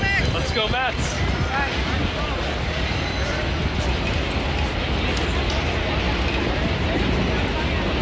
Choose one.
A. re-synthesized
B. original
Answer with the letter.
B